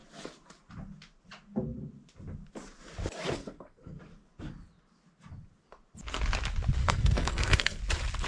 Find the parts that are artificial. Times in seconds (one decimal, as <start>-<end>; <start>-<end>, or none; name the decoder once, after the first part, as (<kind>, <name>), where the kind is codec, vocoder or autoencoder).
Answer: 3.4-4.0 (codec, SNAC); 6.8-7.8